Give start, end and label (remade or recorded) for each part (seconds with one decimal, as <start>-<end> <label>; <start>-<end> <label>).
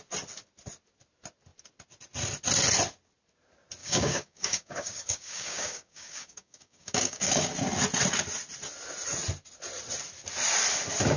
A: 0.0-3.8 recorded; 3.8-7.5 remade; 7.5-11.2 recorded